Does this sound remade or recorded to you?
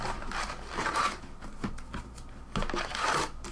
recorded